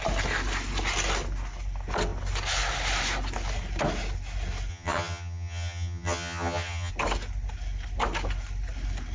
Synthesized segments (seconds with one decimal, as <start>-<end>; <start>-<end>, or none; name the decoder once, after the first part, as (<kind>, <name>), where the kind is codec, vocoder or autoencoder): 4.7-6.9 (vocoder, HiFi-GAN)